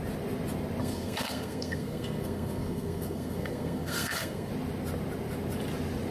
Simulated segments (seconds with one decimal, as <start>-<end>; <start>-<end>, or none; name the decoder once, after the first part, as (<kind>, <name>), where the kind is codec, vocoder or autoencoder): 0.8-4.5 (codec, SNAC)